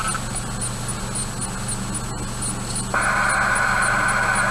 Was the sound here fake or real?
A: real